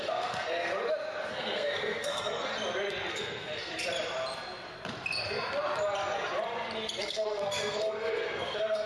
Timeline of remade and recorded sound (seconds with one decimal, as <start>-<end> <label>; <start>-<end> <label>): 0.0-0.7 remade; 0.7-1.3 recorded; 1.3-2.5 remade; 2.5-3.1 recorded; 3.1-3.7 remade; 3.7-7.0 recorded; 7.0-8.9 remade